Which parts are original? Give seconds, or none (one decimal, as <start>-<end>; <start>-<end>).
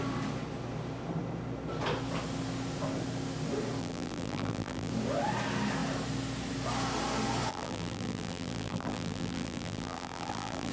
0.0-3.8; 4.9-7.5